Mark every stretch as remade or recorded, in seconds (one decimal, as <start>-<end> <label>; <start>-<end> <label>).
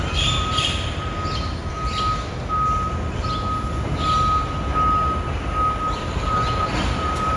0.0-1.6 remade; 1.6-6.0 recorded; 6.0-7.4 remade